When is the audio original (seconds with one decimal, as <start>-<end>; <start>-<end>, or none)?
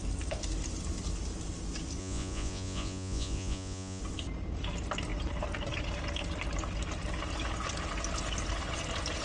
0.0-2.0; 4.0-9.2